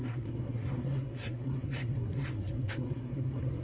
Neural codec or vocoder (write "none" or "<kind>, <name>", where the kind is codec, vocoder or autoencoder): codec, SNAC